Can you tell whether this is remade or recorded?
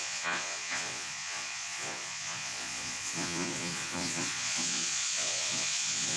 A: remade